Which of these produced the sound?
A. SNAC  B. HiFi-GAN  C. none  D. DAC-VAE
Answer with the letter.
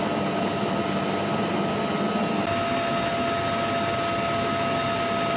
C